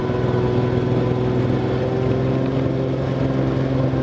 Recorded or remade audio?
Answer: recorded